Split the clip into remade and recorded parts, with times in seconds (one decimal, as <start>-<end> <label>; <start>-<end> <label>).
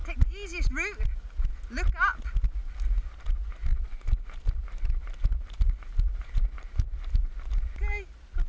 0.0-3.7 recorded; 3.7-7.7 remade; 7.7-8.5 recorded